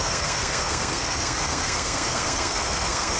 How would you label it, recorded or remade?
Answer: remade